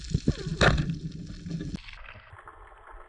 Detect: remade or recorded recorded